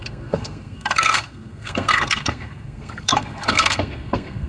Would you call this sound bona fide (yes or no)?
no